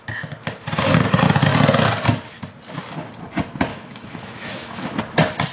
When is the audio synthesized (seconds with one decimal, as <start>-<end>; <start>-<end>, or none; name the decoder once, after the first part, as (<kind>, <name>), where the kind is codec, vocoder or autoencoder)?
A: 3.7-5.0 (autoencoder, DAC-VAE)